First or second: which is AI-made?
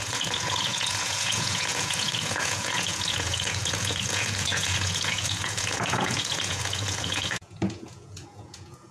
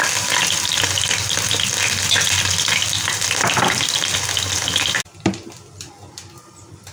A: first